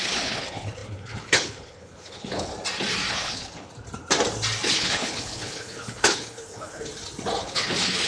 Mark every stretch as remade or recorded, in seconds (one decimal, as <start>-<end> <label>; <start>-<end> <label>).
0.0-2.5 remade; 2.5-3.1 recorded; 3.1-3.7 remade; 3.7-4.7 recorded; 4.7-6.9 remade; 6.9-7.4 recorded; 7.4-8.1 remade

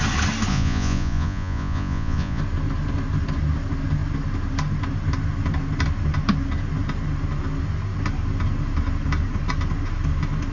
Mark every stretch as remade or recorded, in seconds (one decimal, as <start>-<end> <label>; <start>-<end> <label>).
0.0-0.5 recorded; 0.5-2.4 remade; 2.4-10.5 recorded

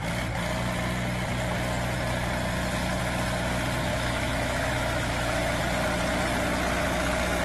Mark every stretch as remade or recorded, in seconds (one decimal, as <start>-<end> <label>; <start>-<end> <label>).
0.0-3.9 recorded; 3.9-5.6 remade; 5.6-7.4 recorded

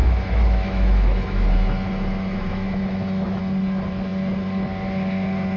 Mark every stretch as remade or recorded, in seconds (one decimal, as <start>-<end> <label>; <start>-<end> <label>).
0.0-3.4 remade; 3.4-5.6 recorded

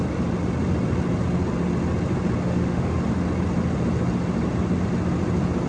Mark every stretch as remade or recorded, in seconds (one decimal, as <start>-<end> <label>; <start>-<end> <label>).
0.0-2.4 recorded; 2.4-3.0 remade; 3.0-5.7 recorded

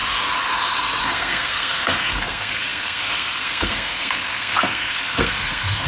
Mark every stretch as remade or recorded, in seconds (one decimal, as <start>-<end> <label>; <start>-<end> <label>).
0.0-1.0 recorded; 1.0-5.9 remade

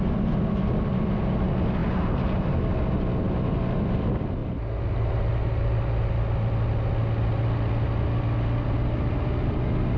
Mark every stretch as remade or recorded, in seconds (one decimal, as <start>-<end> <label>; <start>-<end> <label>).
0.0-10.0 recorded